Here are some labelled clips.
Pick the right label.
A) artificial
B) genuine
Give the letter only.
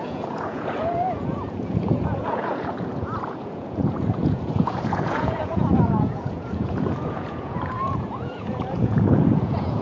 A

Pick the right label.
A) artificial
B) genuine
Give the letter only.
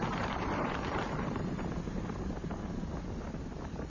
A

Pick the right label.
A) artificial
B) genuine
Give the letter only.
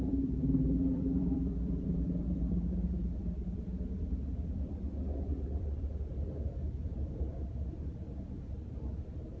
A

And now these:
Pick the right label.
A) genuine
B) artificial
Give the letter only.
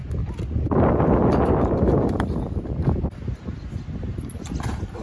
A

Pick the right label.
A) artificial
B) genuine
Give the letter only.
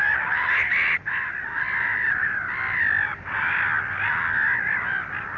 B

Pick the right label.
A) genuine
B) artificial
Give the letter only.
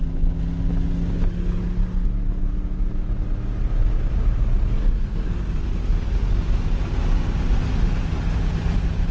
A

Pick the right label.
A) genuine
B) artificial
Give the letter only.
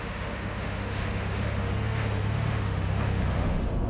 B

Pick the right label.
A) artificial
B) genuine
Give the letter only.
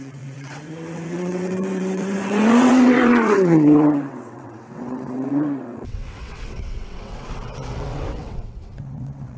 A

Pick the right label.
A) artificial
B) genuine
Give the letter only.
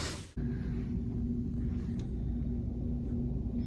B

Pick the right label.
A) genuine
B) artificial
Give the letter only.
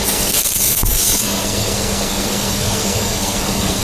B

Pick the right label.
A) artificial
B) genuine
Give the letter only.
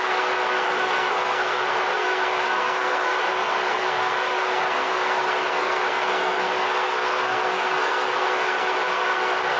A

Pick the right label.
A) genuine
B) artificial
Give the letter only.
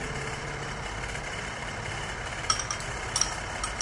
A